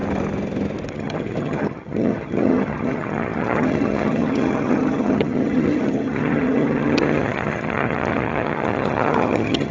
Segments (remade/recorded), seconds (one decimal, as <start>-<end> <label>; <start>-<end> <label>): 0.0-0.9 recorded; 0.9-9.7 remade